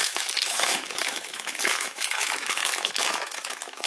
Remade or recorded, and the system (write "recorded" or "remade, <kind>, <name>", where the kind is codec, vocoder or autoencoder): remade, autoencoder, DAC-VAE